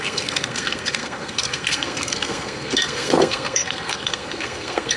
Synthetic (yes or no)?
yes